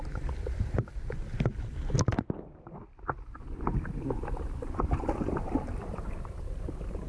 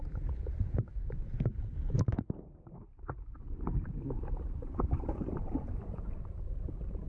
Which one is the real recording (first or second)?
first